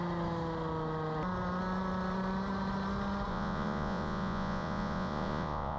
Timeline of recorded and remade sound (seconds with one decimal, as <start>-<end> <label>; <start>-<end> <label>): 0.0-3.3 recorded; 3.3-5.8 remade